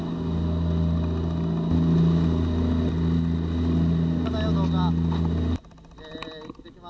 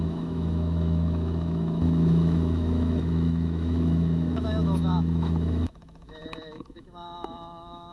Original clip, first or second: first